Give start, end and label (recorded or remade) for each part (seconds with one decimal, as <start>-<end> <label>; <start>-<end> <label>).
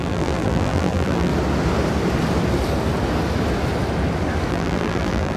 0.0-1.3 remade; 1.3-4.5 recorded; 4.5-5.4 remade